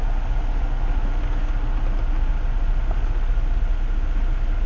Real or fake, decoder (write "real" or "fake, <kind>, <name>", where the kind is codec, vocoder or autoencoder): real